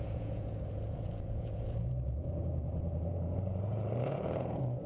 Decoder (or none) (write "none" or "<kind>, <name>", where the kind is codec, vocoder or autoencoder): vocoder, Vocos